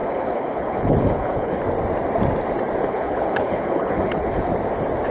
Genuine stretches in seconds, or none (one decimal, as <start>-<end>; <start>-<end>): 1.6-2.8; 4.5-5.1